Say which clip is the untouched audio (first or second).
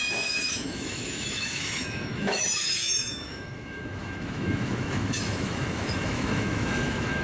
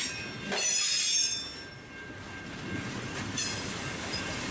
second